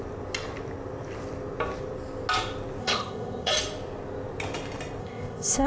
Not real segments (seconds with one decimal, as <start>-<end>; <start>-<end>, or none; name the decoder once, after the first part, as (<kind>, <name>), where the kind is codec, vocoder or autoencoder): 2.8-3.5 (codec, ZipCodec); 5.0-5.7